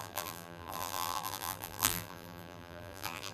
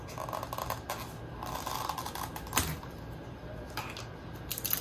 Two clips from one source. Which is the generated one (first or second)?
first